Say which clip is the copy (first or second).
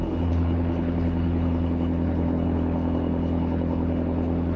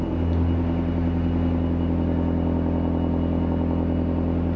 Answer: first